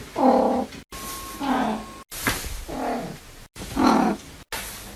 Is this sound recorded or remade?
recorded